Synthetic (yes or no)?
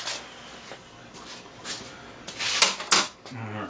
no